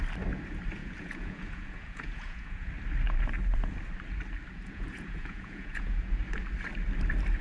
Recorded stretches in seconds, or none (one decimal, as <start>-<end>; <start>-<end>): 0.0-0.8; 2.7-4.5; 6.2-7.4